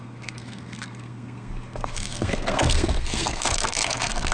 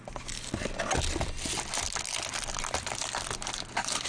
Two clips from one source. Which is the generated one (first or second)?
first